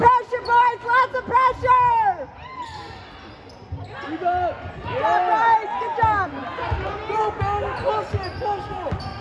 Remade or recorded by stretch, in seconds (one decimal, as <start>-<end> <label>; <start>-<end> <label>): 0.0-9.2 recorded